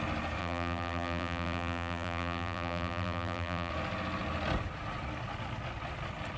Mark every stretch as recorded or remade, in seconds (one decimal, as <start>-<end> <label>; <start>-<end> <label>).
0.0-0.4 recorded; 0.4-3.7 remade; 3.7-6.4 recorded